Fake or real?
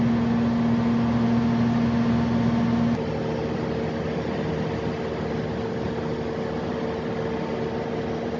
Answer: real